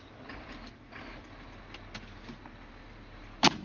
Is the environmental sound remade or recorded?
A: recorded